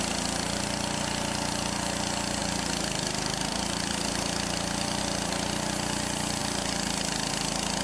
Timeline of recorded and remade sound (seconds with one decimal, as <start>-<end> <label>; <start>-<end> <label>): 0.0-2.4 recorded; 2.4-5.0 remade; 5.0-7.8 recorded